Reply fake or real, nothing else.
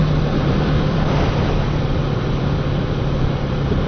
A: fake